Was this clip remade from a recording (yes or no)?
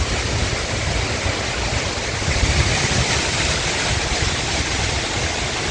no